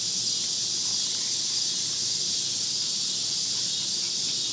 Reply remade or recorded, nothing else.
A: recorded